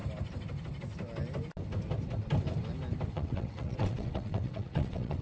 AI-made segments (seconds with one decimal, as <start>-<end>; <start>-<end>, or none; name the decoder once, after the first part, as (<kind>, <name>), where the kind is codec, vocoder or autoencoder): 3.1-5.2 (vocoder, WaveNeXt)